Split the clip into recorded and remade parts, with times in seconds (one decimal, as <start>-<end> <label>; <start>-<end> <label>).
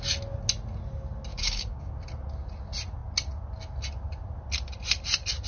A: 0.0-1.3 recorded; 1.3-1.9 remade; 1.9-5.5 recorded